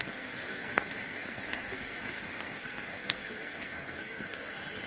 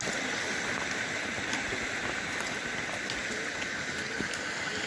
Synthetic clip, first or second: first